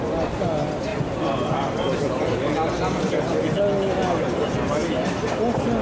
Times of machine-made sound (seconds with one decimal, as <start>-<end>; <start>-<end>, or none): 0.9-3.4; 4.8-5.8